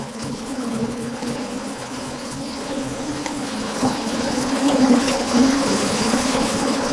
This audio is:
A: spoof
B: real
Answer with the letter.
A